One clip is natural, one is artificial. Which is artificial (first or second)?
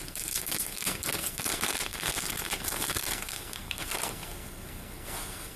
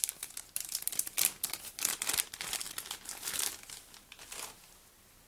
first